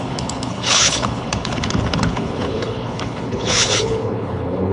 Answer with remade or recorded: remade